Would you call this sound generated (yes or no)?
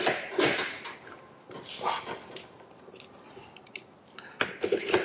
no